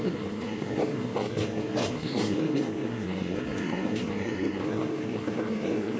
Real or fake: fake